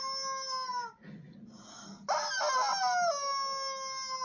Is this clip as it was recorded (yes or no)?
yes